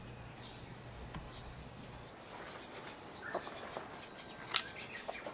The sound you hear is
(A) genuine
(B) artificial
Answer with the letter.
A